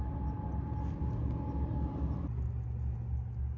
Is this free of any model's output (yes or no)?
yes